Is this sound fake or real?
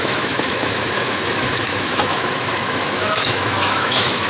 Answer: fake